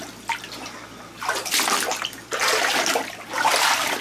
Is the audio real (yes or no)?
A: no